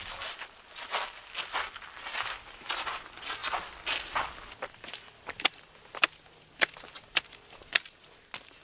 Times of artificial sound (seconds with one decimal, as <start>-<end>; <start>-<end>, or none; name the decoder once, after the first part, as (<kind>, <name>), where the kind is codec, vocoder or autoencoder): none